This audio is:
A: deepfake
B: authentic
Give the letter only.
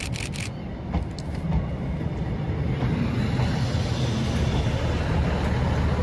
B